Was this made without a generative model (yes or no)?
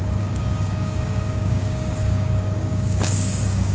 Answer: no